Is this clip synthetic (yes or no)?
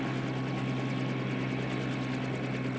no